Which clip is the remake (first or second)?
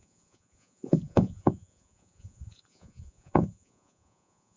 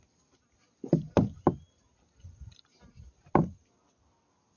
first